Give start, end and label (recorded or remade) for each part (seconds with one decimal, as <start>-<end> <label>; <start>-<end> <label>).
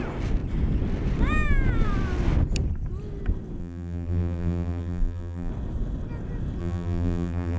0.0-3.6 recorded; 3.6-5.5 remade; 5.5-6.6 recorded; 6.6-7.6 remade